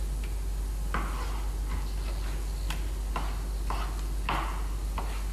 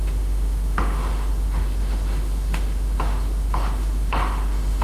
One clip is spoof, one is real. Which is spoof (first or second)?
second